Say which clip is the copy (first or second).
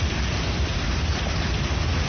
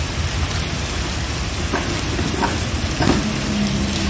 first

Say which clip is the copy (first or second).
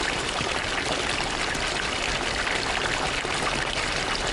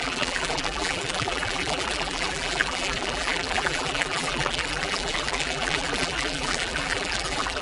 second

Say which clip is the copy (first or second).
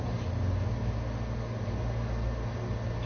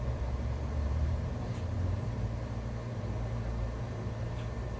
second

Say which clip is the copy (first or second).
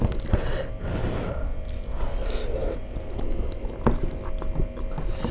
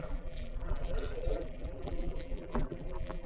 second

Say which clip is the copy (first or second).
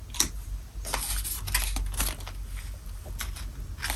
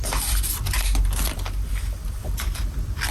second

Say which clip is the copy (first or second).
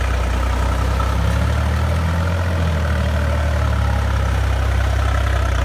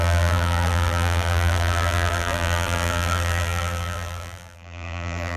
second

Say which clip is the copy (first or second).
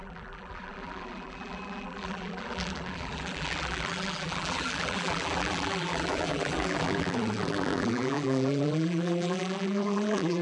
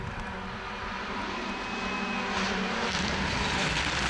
first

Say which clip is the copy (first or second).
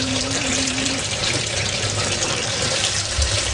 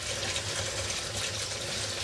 first